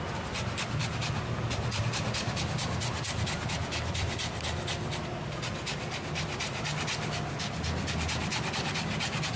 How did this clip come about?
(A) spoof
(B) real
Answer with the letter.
B